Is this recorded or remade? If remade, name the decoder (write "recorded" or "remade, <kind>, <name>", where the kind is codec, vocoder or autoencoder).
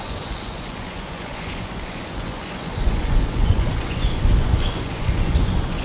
remade, vocoder, Vocos